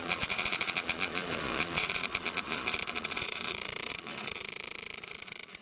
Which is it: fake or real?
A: fake